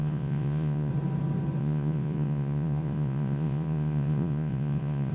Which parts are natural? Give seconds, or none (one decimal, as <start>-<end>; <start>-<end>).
0.9-1.6